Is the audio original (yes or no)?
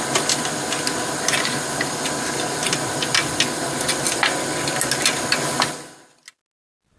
yes